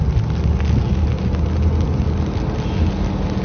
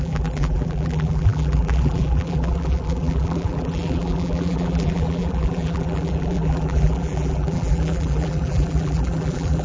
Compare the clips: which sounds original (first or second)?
first